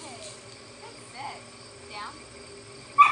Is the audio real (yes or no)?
yes